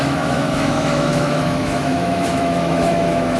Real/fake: fake